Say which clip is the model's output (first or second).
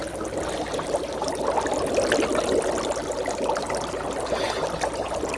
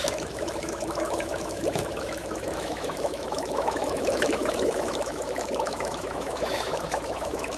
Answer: second